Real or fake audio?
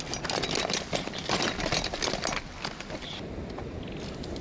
real